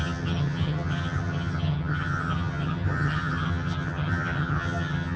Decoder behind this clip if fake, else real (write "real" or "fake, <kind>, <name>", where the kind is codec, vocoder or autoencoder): fake, vocoder, HiFi-GAN